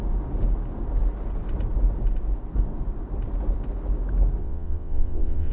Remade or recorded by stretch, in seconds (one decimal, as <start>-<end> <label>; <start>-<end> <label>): 0.0-4.4 recorded; 4.4-5.5 remade